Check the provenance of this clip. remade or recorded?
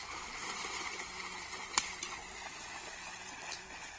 recorded